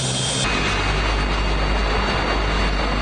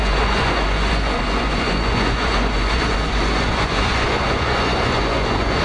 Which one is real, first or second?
first